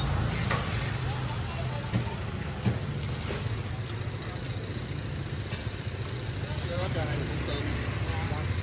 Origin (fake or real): real